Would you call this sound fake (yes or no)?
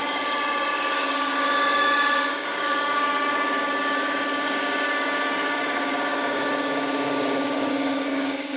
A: yes